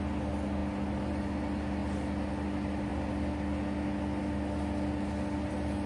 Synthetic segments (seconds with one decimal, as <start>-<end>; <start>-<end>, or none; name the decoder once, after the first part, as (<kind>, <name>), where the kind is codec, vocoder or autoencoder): none